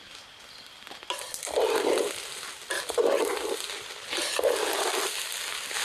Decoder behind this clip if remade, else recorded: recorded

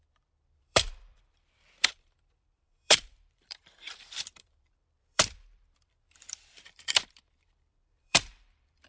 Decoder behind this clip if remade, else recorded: remade, vocoder, BigVGAN v2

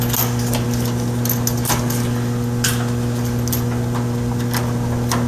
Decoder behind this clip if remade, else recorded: recorded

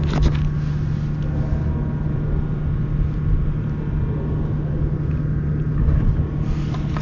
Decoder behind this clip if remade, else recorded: recorded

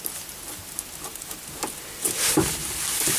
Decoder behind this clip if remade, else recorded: recorded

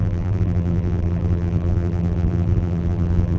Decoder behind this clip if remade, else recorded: remade, vocoder, BigVGAN v2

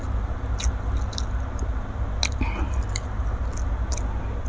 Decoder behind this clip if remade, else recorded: recorded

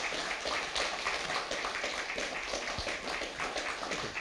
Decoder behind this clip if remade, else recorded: recorded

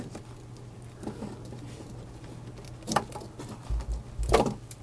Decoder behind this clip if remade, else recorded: recorded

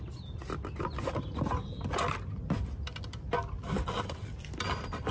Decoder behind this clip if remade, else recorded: recorded